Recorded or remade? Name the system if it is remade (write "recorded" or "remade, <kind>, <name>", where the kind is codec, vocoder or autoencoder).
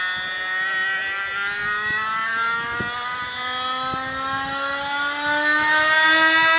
recorded